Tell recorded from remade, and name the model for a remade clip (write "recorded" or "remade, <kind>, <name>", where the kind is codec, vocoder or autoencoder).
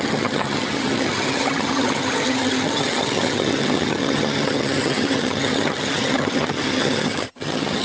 remade, vocoder, HiFi-GAN